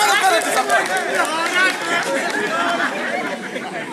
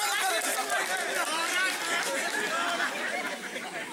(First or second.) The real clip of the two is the first